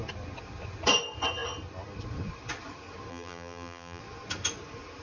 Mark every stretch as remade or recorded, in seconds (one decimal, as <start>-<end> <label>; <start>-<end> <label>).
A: 0.0-3.1 recorded; 3.1-4.0 remade; 4.0-5.0 recorded